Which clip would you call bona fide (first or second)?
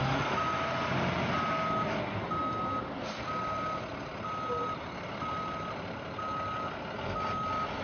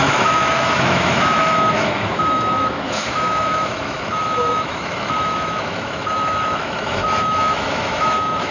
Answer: first